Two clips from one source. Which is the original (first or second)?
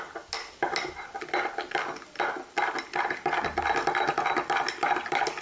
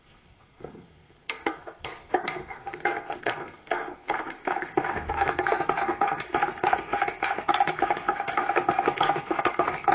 first